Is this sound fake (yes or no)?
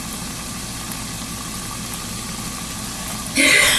no